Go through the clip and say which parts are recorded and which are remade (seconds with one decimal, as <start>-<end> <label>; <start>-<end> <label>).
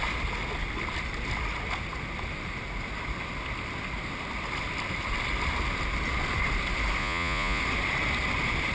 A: 0.0-7.0 recorded; 7.0-7.6 remade; 7.6-8.7 recorded